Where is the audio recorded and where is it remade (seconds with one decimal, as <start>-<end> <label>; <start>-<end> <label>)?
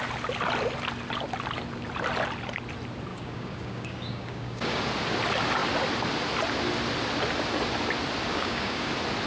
0.0-3.1 recorded; 3.1-4.8 remade; 4.8-8.3 recorded; 8.3-8.9 remade; 8.9-9.3 recorded